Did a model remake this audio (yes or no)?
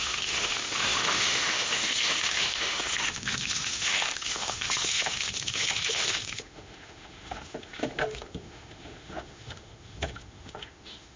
yes